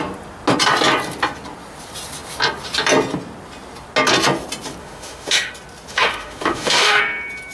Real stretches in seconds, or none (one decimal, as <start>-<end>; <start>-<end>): 0.0-4.8; 5.5-5.9; 7.0-7.5